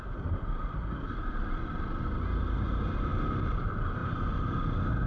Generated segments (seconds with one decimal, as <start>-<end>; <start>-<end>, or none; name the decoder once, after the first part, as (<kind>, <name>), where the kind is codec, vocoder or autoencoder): none